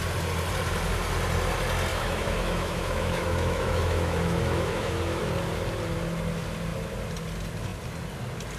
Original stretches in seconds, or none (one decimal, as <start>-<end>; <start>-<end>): 0.0-1.9; 5.2-8.6